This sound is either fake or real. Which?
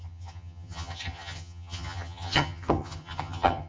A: fake